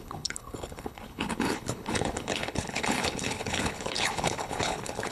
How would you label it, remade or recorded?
remade